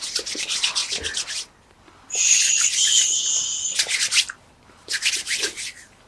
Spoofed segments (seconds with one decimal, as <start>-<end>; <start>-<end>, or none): none

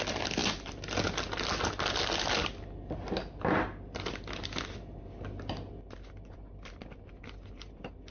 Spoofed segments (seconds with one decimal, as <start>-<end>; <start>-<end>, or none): none

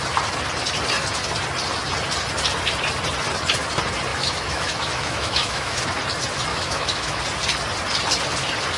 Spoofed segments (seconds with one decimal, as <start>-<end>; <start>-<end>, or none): 4.1-5.8; 6.5-7.2

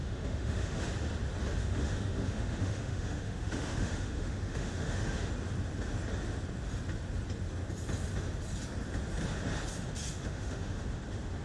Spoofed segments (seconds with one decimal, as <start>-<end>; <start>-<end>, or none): 0.0-0.8; 1.6-5.3; 10.1-10.8

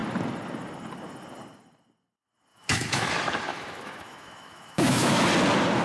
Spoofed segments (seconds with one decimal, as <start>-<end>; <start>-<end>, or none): 2.5-3.1; 3.5-5.3

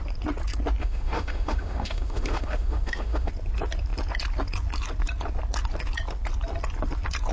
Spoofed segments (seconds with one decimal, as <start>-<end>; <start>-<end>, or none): 0.8-3.3

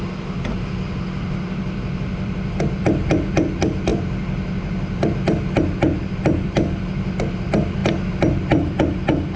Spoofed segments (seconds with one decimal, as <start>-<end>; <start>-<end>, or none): none

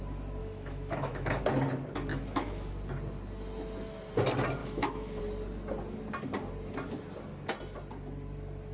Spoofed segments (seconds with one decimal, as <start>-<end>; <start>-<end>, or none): 0.4-1.4; 2.1-2.7; 4.6-5.2